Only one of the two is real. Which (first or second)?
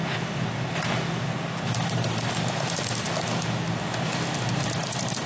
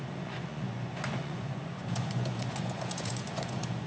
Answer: first